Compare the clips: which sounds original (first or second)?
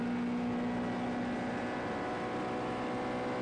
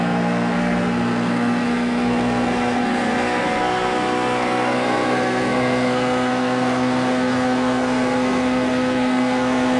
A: first